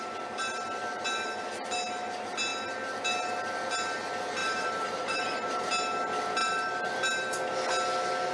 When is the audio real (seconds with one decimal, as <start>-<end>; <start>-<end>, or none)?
0.0-4.4; 5.7-6.4; 6.9-8.3

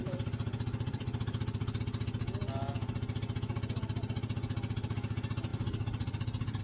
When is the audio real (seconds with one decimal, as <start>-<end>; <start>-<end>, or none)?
1.8-5.5

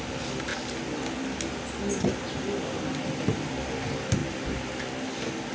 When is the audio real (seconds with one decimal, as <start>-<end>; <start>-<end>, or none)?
0.0-5.5

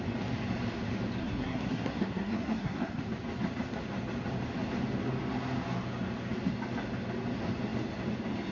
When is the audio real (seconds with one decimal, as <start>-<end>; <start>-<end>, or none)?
0.0-1.2; 3.0-8.5

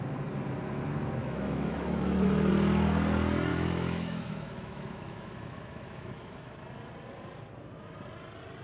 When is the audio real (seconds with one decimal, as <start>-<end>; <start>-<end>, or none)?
0.0-1.2; 2.5-3.5; 6.5-8.6

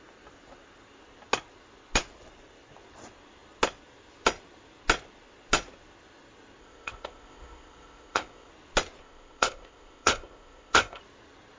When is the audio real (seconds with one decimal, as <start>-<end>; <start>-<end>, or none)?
0.0-6.6; 8.5-9.0; 11.0-11.6

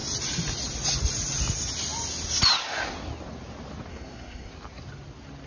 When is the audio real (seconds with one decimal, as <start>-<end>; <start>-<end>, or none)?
0.0-3.9; 4.5-5.5